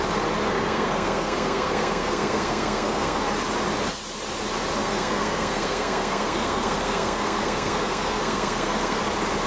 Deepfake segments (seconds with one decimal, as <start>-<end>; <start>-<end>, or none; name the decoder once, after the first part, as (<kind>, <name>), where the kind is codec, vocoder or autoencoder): 0.5-3.2 (codec, SNAC); 4.8-9.0